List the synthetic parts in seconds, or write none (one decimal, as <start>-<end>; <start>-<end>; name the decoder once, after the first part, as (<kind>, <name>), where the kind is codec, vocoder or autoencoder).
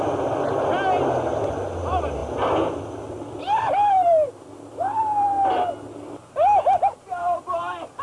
none